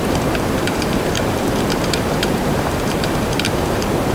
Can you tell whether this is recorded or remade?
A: remade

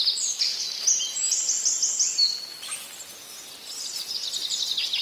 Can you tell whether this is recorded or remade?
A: recorded